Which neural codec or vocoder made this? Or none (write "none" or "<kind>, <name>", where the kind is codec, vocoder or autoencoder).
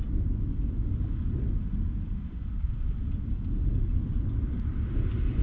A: none